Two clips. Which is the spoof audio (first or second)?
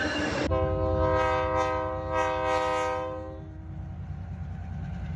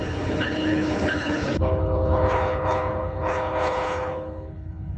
second